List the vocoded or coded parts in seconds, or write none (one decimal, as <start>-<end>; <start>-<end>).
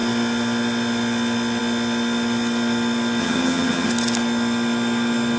3.2-3.9